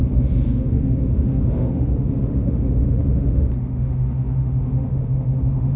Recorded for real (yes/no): no